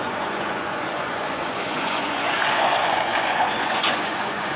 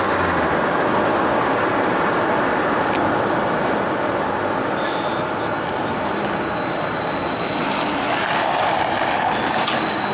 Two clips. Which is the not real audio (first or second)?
first